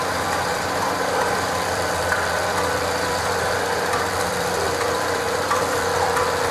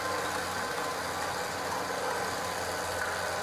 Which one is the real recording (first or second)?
second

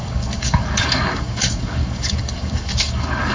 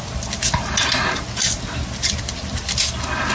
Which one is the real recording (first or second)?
second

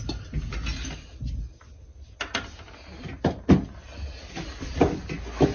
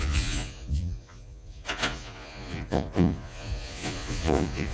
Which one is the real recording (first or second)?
first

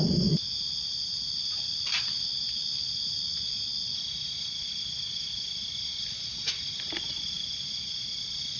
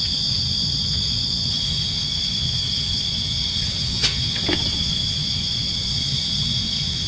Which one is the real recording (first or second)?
first